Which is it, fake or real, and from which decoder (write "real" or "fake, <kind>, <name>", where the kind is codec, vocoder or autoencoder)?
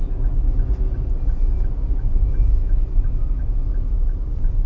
real